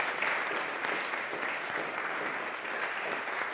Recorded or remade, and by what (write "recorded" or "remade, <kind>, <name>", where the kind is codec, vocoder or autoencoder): recorded